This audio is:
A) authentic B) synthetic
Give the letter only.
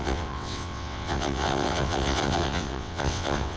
B